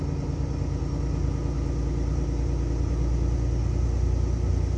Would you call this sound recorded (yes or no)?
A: yes